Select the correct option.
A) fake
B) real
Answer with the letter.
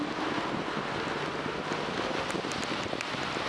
B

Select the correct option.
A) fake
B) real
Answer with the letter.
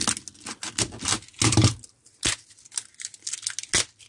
B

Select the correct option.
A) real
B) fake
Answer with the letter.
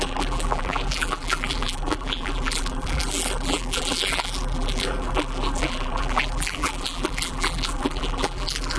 B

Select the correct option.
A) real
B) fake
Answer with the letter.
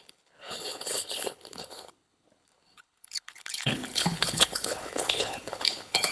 B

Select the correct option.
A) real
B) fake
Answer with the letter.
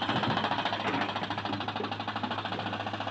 A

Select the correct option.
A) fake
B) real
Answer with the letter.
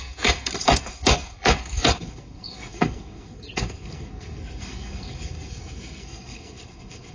A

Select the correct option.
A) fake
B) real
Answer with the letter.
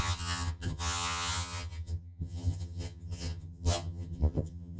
A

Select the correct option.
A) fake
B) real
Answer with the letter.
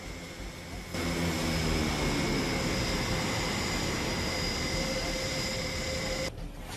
B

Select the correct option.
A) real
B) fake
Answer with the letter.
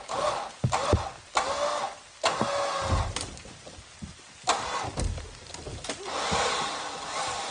A